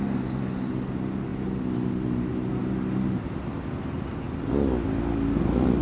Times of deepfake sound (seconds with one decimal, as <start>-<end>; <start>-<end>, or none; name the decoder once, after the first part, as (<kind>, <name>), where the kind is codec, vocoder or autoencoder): none